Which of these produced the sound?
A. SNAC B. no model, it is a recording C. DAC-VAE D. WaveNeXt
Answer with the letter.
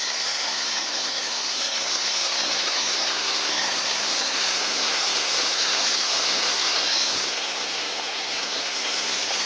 A